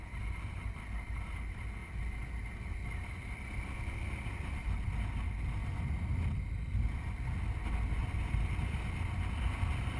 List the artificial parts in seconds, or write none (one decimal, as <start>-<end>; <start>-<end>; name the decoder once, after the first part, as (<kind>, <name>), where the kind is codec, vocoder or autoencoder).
8.0-10.0 (vocoder, BigVGAN v2)